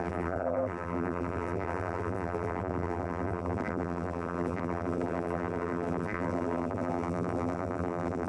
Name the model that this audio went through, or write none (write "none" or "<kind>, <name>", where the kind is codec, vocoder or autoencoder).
vocoder, BigVGAN v2